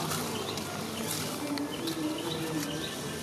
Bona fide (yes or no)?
yes